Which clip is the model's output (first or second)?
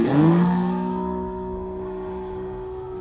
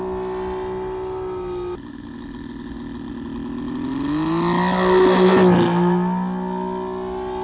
first